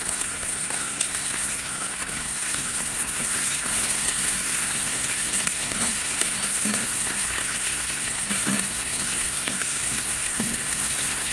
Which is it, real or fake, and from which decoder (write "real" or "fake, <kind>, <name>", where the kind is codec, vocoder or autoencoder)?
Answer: fake, codec, SNAC